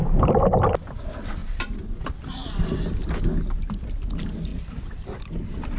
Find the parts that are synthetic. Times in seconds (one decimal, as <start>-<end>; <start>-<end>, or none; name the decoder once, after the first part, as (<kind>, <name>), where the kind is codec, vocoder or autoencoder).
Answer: 0.0-1.4 (vocoder, BigVGAN v2); 2.2-3.0; 3.5-4.5; 5.2-5.8